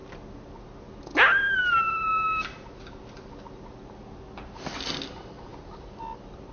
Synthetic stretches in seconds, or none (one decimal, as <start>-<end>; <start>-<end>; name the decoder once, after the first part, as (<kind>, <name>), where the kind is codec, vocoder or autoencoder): none